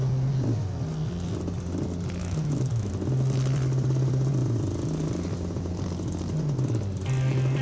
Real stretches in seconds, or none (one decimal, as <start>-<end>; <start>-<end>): 0.0-2.2; 2.9-7.6